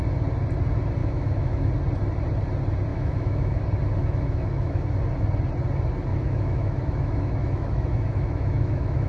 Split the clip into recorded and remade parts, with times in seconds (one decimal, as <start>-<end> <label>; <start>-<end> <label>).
0.0-1.0 recorded; 1.0-1.7 remade; 1.7-2.9 recorded; 2.9-3.6 remade; 3.6-4.0 recorded; 4.0-5.0 remade; 5.0-6.1 recorded; 6.1-9.1 remade